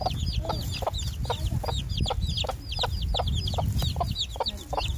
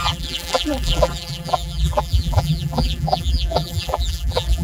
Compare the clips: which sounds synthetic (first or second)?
second